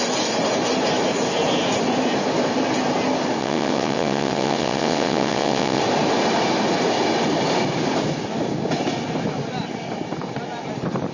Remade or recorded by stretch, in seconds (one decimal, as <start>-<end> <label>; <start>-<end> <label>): 0.0-3.4 recorded; 3.4-5.8 remade; 5.8-11.1 recorded